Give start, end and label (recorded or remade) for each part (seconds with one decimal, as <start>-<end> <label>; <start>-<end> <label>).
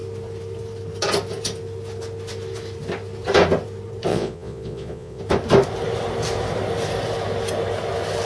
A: 0.0-4.1 recorded; 4.1-5.2 remade; 5.2-8.3 recorded